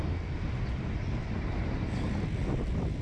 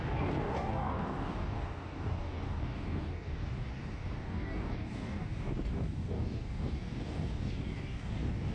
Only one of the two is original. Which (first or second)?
first